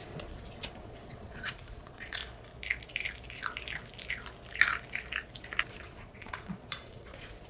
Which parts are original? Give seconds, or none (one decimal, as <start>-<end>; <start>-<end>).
2.2-5.7